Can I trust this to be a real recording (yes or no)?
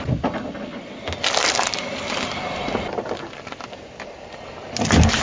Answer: yes